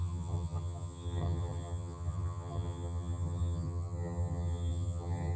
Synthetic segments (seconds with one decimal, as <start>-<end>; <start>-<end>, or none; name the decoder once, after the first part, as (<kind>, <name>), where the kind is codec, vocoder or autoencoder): 0.0-5.4 (vocoder, HiFi-GAN)